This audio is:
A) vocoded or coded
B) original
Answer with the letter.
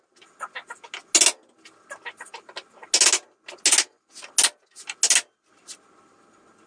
B